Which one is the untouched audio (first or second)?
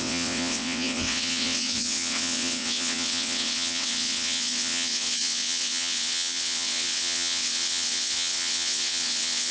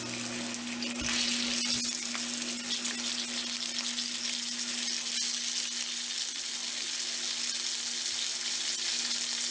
second